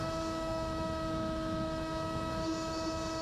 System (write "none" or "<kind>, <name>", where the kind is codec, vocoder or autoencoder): autoencoder, DAC-VAE